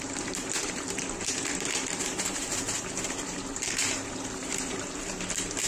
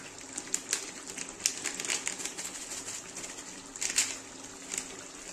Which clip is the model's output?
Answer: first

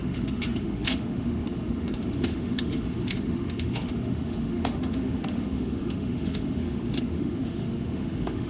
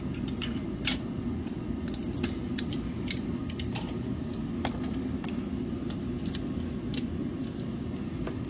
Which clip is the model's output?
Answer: first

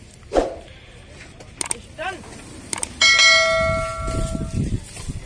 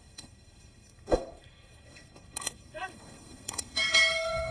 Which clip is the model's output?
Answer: second